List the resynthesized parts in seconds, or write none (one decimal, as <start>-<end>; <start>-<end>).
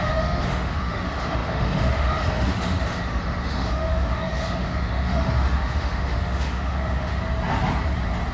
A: 0.0-7.2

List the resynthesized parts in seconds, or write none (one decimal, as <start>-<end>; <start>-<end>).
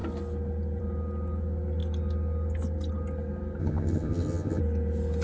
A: 3.6-4.6